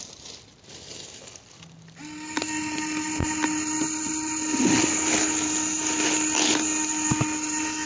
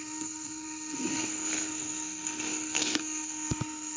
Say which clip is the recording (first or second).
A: first